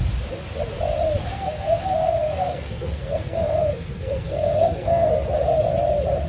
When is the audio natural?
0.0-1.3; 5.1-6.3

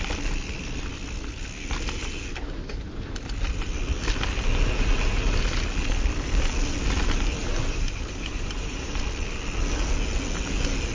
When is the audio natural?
0.0-7.4; 9.0-10.9

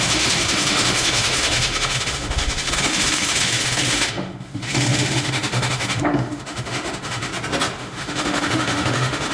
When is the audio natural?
7.3-7.8

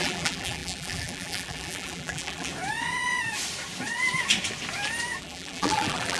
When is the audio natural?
2.5-5.2